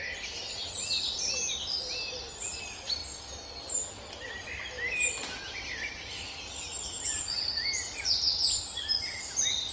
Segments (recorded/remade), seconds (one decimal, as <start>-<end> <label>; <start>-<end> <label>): 0.0-9.7 recorded